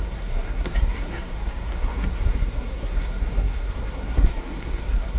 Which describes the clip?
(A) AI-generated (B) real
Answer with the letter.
A